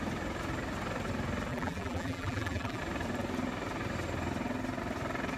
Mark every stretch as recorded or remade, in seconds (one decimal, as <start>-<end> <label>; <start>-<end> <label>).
0.0-1.5 recorded; 1.5-2.8 remade; 2.8-5.4 recorded